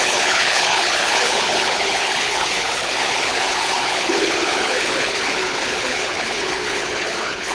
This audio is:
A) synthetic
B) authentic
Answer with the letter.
A